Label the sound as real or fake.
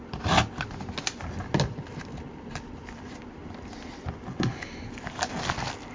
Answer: real